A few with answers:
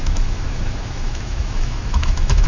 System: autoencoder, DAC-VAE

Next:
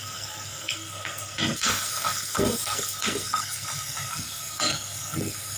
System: codec, SNAC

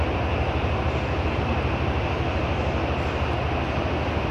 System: none